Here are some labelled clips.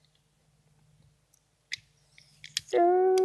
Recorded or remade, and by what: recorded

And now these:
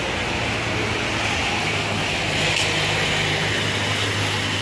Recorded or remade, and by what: recorded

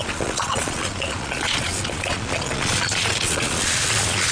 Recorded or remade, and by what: remade, vocoder, Vocos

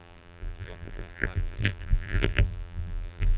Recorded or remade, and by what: remade, vocoder, BigVGAN v2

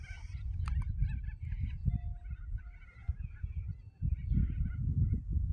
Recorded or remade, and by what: recorded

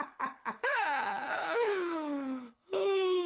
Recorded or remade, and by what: remade, codec, HILCodec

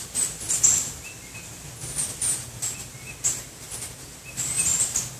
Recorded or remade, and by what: recorded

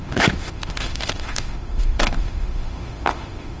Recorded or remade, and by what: remade, autoencoder, DAC-VAE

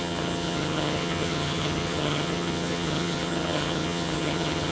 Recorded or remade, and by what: remade, vocoder, HiFi-GAN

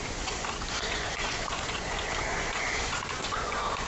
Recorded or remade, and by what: remade, vocoder, Vocos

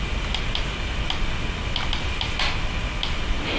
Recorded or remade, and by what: recorded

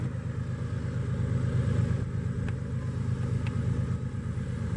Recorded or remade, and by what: recorded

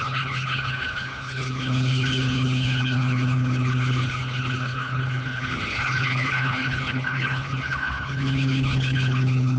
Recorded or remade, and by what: remade, codec, HILCodec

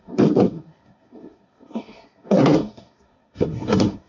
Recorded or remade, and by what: remade, codec, SNAC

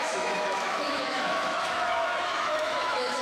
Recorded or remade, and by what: remade, autoencoder, DAC-VAE